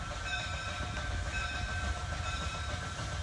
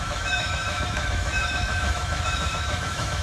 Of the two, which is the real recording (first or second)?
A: first